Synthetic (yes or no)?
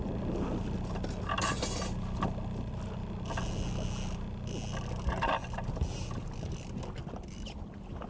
no